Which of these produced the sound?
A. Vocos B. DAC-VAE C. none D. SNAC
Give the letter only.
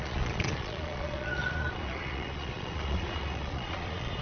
A